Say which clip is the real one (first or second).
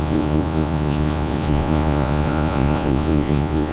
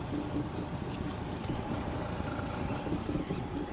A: second